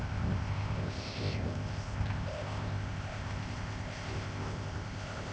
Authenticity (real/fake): fake